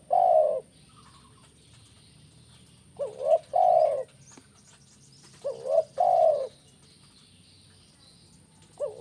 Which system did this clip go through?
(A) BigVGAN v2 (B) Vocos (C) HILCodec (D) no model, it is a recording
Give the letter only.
D